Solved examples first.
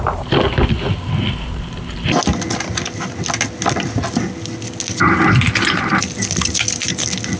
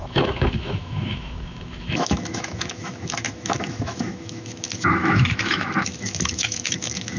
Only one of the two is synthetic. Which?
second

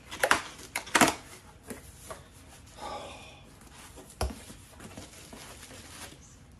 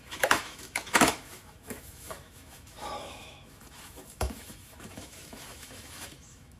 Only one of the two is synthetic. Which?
second